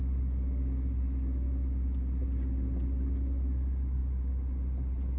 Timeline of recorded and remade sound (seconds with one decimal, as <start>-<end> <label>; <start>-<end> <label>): 0.0-5.2 recorded